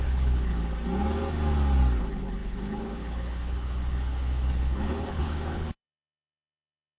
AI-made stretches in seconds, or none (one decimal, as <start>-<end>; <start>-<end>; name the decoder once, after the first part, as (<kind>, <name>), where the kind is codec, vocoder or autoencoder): 0.0-0.7 (codec, HILCodec); 2.0-7.0